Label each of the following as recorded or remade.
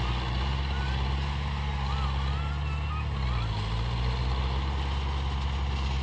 recorded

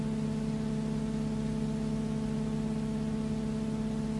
recorded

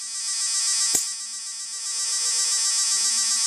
recorded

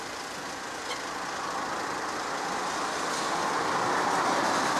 recorded